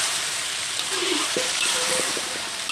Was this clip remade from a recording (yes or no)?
yes